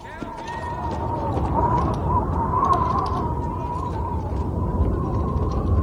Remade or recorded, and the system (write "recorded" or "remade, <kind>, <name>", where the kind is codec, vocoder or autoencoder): recorded